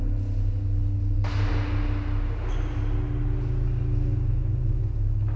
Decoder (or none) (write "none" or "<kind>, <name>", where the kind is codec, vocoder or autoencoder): none